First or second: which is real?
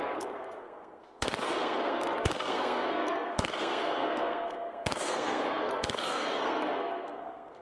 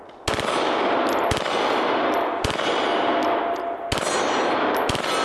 second